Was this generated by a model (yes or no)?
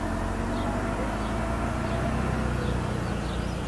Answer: no